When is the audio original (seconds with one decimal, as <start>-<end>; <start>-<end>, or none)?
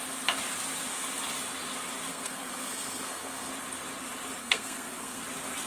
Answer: 0.0-2.1; 3.5-4.4; 5.2-5.7